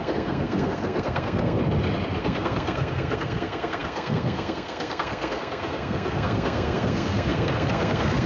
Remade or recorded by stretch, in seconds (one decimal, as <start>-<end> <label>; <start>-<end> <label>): 0.0-1.6 remade; 1.6-2.2 recorded; 2.2-8.3 remade